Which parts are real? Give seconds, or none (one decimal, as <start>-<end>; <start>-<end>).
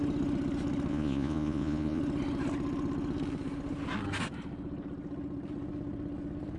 0.0-0.9; 2.0-6.6